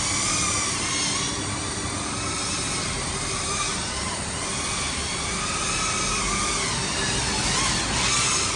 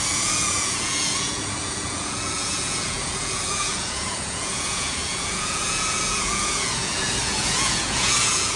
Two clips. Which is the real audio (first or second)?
first